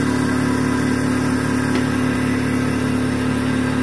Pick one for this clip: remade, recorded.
recorded